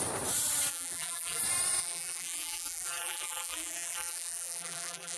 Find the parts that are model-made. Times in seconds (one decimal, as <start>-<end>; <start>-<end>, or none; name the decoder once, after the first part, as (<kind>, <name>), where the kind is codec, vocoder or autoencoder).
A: 0.7-1.4 (vocoder, BigVGAN v2); 1.8-5.2